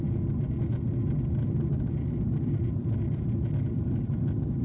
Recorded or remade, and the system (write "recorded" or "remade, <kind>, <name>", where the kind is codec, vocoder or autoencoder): recorded